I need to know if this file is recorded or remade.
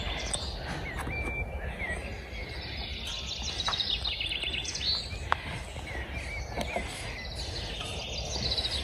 recorded